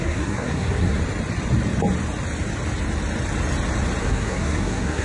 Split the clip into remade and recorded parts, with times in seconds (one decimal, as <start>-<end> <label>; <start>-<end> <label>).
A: 0.0-1.0 remade; 1.0-4.0 recorded; 4.0-5.0 remade